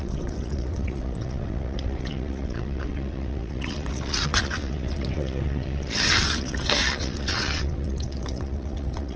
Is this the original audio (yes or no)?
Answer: no